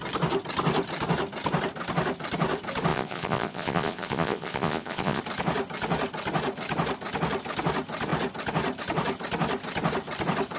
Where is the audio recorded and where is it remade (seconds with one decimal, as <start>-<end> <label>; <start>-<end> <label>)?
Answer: 0.0-2.9 recorded; 2.9-5.2 remade; 5.2-10.6 recorded